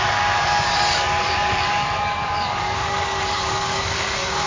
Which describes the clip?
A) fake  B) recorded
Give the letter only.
A